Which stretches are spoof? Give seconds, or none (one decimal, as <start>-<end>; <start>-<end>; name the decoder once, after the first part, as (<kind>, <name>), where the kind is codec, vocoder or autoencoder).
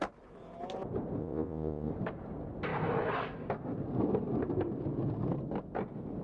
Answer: 1.2-1.9 (vocoder, Vocos)